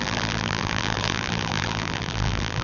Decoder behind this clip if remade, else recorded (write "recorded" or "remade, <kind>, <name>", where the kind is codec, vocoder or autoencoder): remade, vocoder, BigVGAN v2